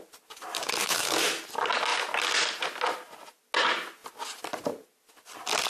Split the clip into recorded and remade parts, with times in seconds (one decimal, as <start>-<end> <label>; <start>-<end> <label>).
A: 0.0-0.8 recorded; 0.8-1.4 remade; 1.4-5.7 recorded